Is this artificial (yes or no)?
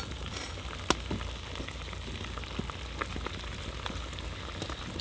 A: no